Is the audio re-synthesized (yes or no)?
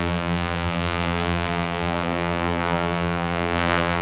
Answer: yes